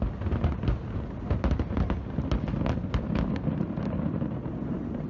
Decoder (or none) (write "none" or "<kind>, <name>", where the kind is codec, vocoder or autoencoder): none